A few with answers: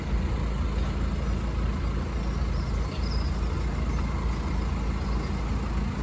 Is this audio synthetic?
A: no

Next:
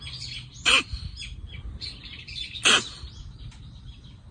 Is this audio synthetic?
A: no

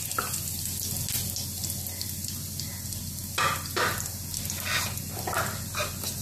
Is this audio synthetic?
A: no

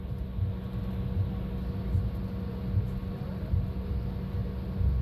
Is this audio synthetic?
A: no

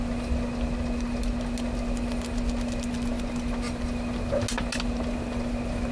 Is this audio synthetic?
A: no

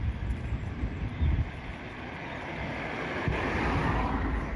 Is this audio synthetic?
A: no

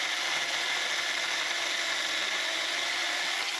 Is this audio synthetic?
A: no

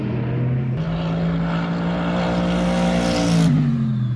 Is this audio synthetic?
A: no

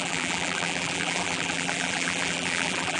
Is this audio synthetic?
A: yes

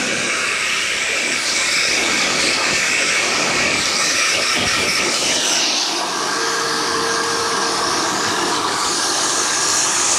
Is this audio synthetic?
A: yes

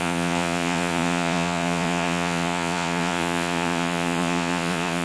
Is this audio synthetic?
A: yes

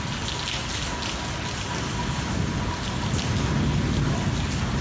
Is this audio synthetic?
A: no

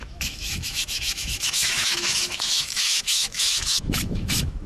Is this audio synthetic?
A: yes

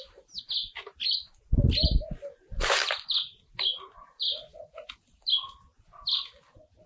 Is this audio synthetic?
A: no